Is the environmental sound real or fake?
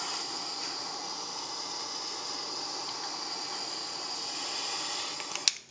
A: real